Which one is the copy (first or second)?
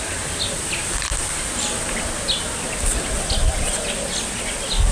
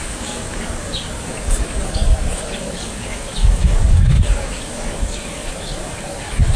second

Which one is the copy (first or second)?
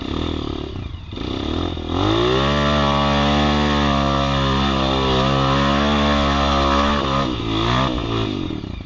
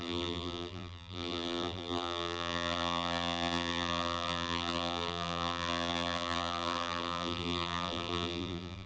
second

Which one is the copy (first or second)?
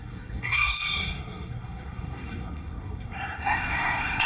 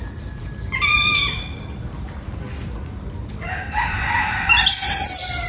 first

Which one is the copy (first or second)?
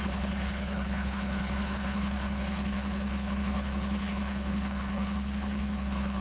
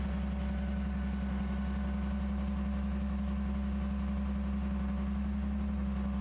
first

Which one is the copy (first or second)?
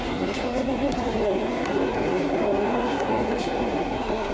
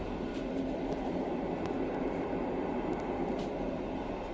first